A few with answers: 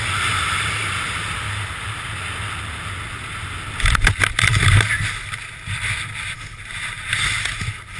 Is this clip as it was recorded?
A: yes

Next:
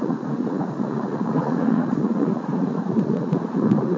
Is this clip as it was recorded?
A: no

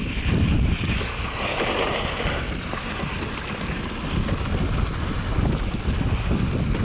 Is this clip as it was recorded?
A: yes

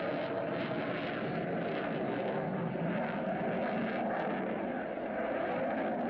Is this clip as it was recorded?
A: yes